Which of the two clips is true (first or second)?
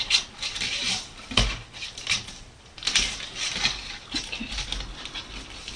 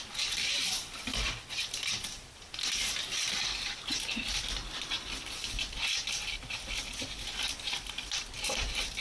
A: first